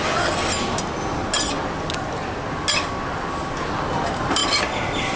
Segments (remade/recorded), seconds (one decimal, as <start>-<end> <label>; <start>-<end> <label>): 0.0-5.2 recorded